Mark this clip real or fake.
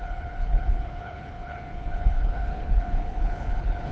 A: fake